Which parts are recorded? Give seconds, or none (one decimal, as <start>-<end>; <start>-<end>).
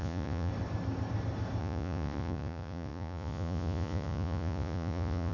0.5-1.6